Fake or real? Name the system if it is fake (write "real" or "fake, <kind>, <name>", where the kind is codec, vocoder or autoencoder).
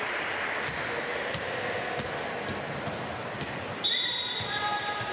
real